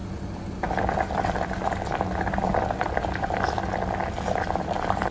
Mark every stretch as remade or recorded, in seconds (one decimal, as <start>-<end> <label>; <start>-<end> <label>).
0.0-5.1 recorded